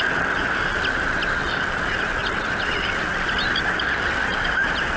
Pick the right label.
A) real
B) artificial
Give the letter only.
A